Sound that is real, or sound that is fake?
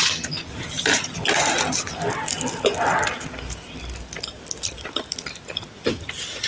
real